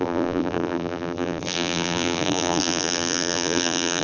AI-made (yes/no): yes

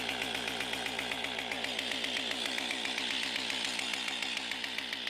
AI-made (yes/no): no